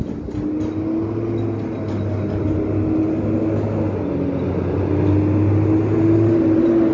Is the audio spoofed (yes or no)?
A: no